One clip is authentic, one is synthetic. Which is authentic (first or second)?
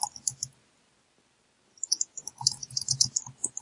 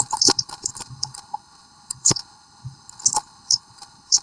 first